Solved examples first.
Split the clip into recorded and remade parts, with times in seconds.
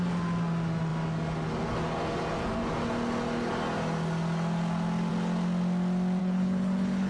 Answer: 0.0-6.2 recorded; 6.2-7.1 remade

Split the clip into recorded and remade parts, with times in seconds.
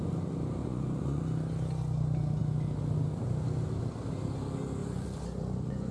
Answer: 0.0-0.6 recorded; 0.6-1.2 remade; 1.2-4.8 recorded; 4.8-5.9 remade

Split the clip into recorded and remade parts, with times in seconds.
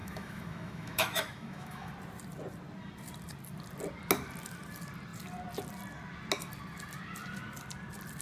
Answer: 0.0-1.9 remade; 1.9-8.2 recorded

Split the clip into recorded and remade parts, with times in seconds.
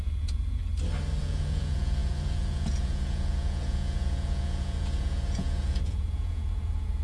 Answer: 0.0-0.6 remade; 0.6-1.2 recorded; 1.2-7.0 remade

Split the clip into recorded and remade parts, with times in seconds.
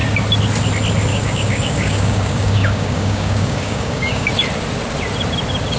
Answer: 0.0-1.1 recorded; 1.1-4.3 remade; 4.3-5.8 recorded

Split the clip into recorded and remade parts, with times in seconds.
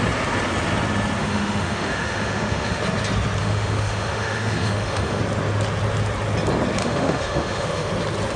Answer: 0.0-1.2 recorded; 1.2-2.8 remade; 2.8-3.4 recorded; 3.4-5.2 remade; 5.2-6.8 recorded; 6.8-7.9 remade; 7.9-8.4 recorded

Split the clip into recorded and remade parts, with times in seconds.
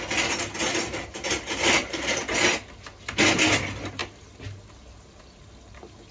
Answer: 0.0-0.7 recorded; 0.7-2.2 remade; 2.2-6.1 recorded